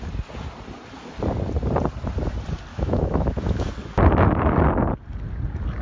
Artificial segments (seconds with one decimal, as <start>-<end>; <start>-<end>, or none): 2.7-3.7